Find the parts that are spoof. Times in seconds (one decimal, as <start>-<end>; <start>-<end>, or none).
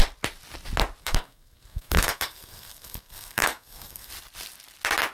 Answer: 1.0-4.1